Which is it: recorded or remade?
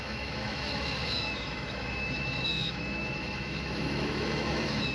remade